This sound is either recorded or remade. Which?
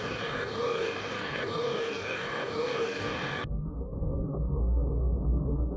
remade